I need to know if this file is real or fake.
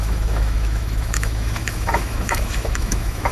fake